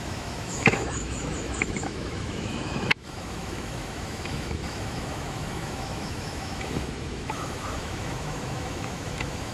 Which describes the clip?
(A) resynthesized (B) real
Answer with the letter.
A